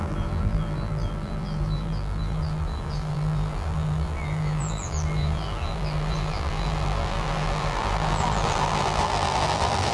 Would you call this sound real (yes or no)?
no